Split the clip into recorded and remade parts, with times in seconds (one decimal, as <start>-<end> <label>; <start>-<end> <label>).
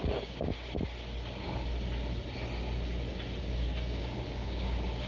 0.0-0.5 remade; 0.5-3.4 recorded; 3.4-5.1 remade